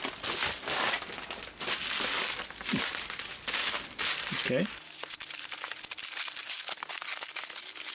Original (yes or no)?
yes